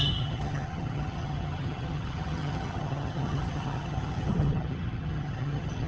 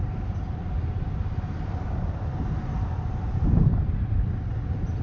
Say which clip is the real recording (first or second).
second